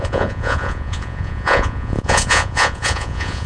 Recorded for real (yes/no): no